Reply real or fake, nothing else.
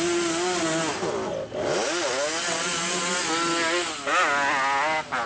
real